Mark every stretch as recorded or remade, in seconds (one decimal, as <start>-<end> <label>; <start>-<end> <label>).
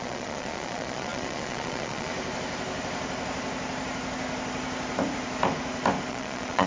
0.0-2.1 remade; 2.1-6.1 recorded; 6.1-6.7 remade